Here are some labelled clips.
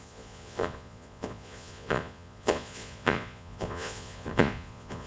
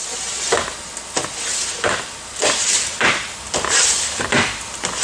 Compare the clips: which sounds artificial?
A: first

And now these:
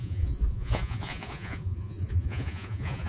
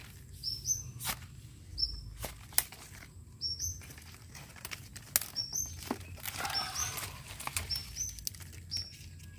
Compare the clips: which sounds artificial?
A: first